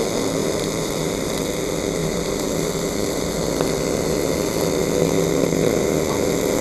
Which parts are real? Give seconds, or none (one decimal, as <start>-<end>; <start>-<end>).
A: 0.0-0.4; 1.3-2.0; 3.3-6.6